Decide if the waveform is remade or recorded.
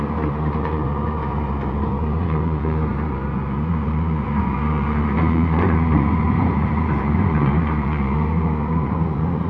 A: remade